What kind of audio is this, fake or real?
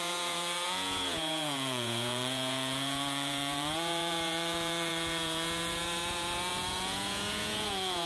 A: fake